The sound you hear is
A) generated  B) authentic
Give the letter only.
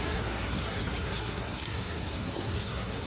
A